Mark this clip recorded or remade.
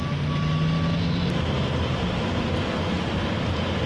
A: recorded